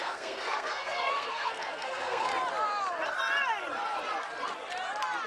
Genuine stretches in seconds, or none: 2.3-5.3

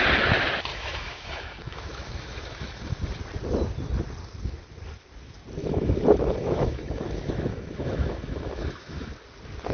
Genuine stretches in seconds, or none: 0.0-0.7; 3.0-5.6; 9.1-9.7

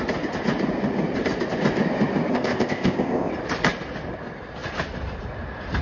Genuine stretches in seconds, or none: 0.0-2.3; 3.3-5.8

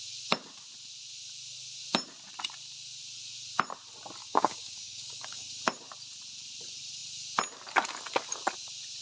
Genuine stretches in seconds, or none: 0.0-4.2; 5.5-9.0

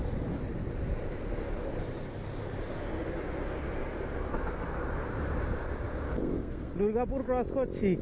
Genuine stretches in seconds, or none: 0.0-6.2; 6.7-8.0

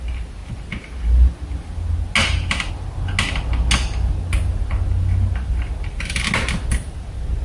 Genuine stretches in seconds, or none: 0.0-7.4